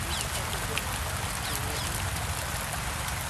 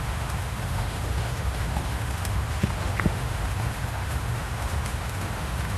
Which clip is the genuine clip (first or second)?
first